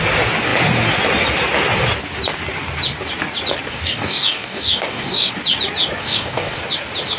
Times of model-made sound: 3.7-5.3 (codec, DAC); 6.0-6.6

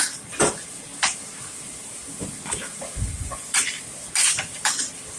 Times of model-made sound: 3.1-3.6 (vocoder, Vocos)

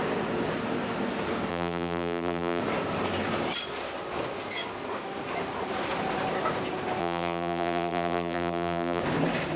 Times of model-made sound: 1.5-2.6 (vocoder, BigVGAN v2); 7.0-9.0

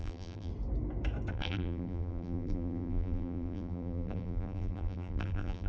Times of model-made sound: 0.0-0.5 (vocoder, BigVGAN v2); 1.3-5.7

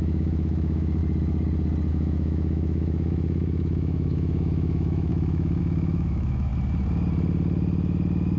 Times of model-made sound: 0.0-1.0 (autoencoder, DAC-VAE); 1.9-6.5

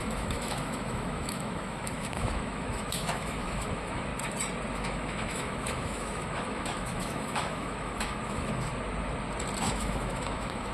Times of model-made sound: 0.0-4.1 (autoencoder, DAC-VAE); 4.7-8.7; 9.6-10.7